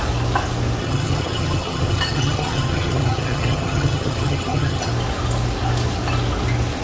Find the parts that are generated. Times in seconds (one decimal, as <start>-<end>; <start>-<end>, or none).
0.8-4.9